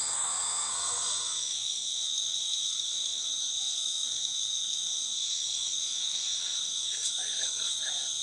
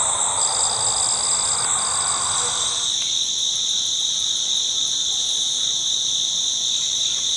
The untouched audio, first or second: second